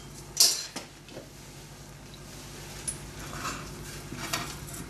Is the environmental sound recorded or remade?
recorded